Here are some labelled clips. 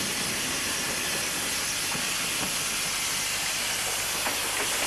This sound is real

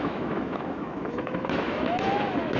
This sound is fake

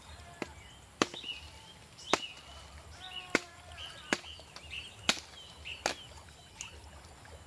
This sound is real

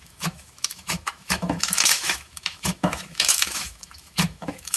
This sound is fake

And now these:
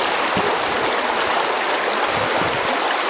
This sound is real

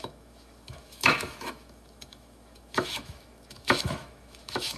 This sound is fake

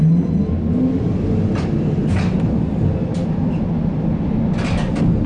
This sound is real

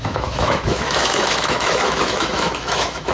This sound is fake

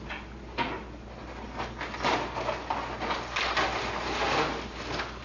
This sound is real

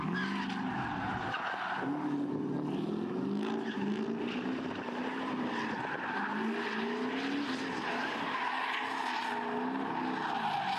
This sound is real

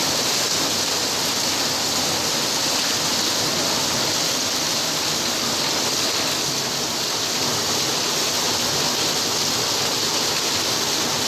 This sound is real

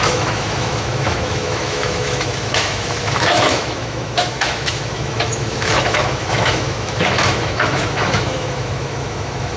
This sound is fake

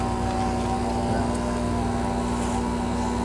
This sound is real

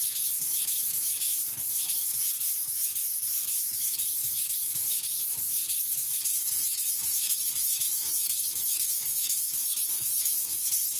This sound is fake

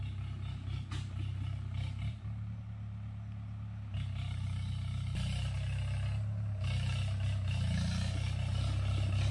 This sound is real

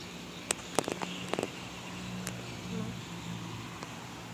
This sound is real